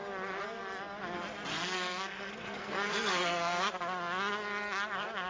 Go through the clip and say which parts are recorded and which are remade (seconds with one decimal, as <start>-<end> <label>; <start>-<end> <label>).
0.0-1.5 recorded; 1.5-3.7 remade; 3.7-5.3 recorded